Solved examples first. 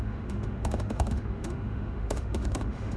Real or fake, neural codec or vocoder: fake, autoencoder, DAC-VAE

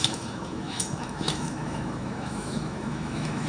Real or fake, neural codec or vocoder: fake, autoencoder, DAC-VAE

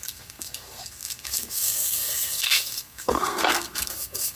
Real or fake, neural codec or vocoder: fake, codec, SNAC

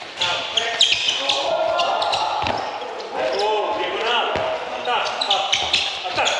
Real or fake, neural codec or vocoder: real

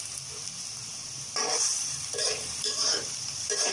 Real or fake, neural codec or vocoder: fake, vocoder, BigVGAN v2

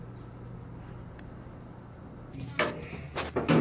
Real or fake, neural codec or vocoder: real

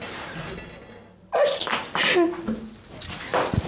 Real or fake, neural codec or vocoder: real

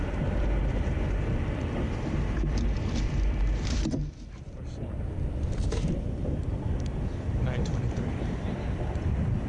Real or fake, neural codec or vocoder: fake, vocoder, BigVGAN v2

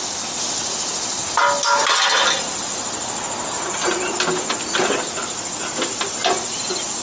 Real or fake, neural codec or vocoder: real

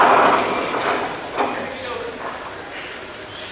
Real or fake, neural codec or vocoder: real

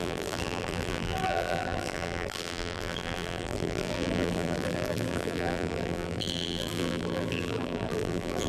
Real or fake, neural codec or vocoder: fake, vocoder, BigVGAN v2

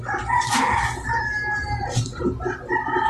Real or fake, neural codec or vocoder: real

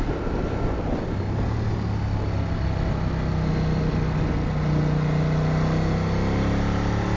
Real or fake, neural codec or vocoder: real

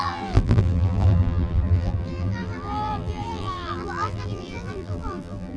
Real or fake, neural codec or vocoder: fake, vocoder, BigVGAN v2